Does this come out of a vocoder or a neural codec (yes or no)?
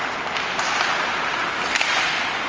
no